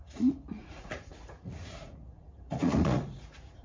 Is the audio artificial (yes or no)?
yes